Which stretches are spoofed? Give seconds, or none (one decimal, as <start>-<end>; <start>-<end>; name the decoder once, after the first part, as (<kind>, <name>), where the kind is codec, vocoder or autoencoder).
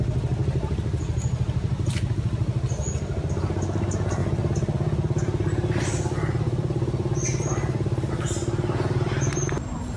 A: none